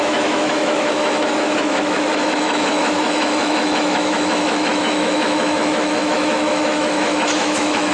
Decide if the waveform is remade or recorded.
remade